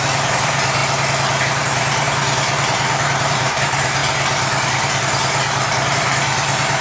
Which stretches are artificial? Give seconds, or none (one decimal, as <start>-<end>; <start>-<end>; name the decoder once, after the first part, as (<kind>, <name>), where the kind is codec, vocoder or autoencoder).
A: 0.0-0.8 (vocoder, BigVGAN v2); 1.4-6.8